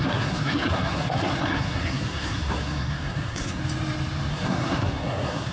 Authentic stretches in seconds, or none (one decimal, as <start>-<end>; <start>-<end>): 3.6-4.3